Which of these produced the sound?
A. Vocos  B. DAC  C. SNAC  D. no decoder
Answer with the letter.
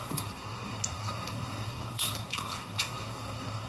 C